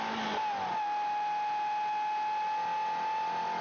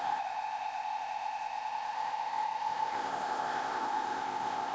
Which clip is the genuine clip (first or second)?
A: first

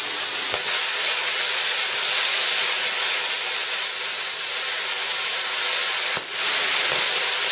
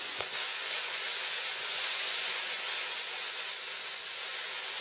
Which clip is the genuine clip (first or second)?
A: first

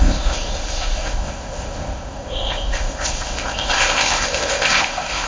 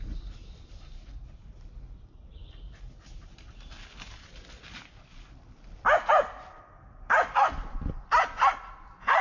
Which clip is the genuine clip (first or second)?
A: second